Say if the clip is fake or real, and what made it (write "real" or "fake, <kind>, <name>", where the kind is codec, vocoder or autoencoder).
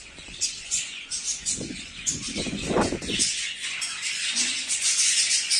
fake, vocoder, Vocos